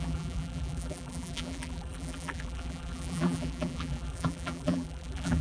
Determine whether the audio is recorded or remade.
remade